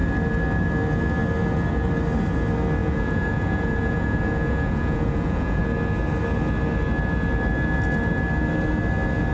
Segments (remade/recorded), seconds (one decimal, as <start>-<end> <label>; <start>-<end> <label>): 0.0-2.8 recorded; 2.8-5.6 remade; 5.6-9.3 recorded